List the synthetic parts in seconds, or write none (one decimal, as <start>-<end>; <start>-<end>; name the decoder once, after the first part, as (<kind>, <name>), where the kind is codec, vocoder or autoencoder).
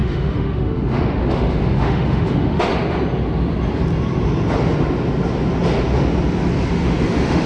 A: 0.0-2.7 (autoencoder, DAC-VAE); 6.7-7.5